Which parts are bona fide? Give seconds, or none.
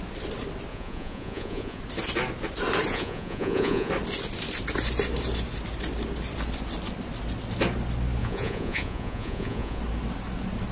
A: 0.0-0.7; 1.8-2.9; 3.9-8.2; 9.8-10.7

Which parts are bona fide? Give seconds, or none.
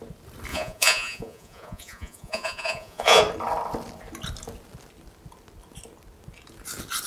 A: 0.0-0.5; 3.2-7.1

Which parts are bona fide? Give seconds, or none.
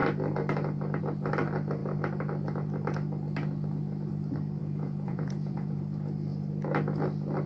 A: 0.0-4.6; 5.8-7.5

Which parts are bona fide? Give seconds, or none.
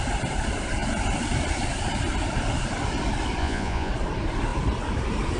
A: 0.0-3.4; 3.9-5.4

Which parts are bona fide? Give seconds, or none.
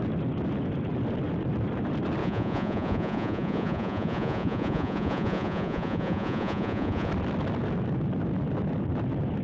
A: 0.0-2.2; 7.1-9.4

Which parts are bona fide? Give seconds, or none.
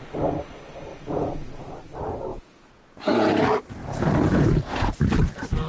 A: 0.0-0.9; 1.6-2.3; 3.3-3.8; 4.9-5.7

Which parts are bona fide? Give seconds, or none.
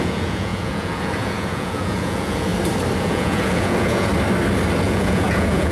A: 2.5-3.0; 4.1-4.8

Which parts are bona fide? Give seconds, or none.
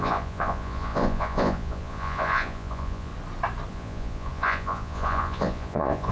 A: 3.1-3.7